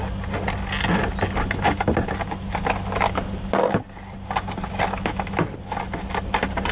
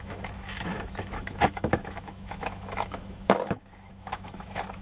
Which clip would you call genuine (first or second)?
first